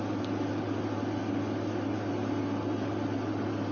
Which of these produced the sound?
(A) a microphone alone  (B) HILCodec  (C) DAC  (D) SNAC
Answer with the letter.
A